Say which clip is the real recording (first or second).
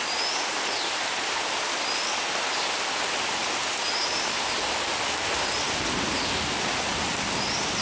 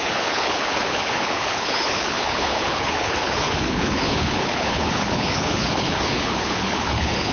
first